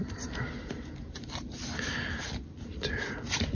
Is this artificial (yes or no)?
no